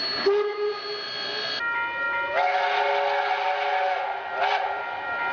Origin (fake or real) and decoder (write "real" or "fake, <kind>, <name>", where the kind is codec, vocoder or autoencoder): real